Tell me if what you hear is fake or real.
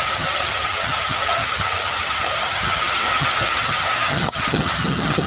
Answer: fake